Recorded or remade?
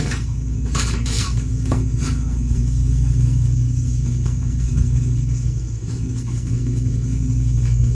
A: remade